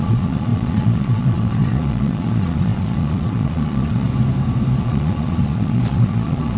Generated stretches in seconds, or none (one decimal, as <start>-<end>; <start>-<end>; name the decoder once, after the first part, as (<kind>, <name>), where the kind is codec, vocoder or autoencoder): 0.0-4.1 (vocoder, Vocos); 4.8-6.6